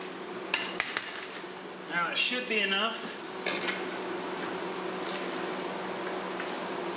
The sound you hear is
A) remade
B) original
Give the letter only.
B